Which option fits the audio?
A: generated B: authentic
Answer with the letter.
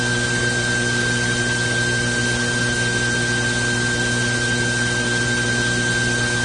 B